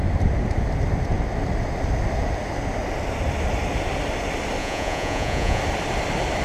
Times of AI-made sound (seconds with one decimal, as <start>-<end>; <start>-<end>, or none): 4.6-5.6